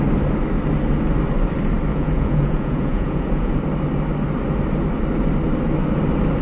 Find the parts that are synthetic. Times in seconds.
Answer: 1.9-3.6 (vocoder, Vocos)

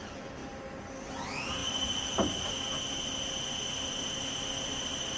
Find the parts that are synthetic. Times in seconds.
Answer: none